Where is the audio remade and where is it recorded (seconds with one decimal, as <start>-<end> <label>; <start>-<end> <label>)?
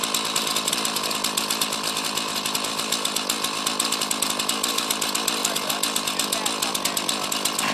0.0-7.7 recorded